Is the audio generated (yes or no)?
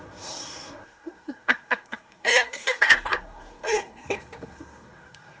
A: yes